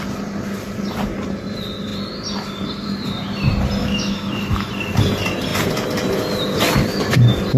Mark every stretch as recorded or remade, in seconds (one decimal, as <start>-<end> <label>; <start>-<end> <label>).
0.0-3.8 recorded; 3.8-4.7 remade; 4.7-7.6 recorded